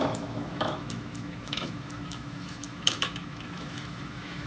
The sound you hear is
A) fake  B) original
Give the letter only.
A